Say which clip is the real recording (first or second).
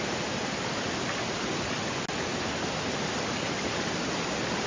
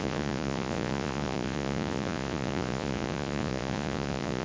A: first